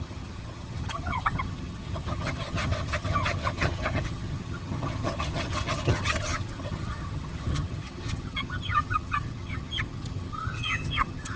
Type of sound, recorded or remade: remade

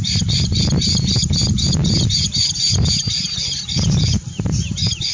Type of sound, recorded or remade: recorded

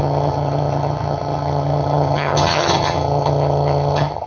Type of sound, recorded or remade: remade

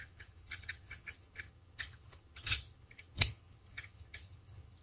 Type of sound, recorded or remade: remade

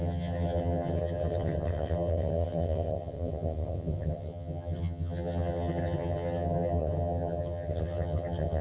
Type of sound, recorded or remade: remade